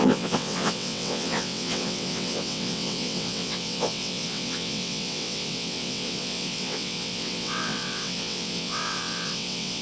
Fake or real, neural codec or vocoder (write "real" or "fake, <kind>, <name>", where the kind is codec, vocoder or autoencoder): fake, vocoder, WaveNeXt